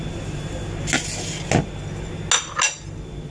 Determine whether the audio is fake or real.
real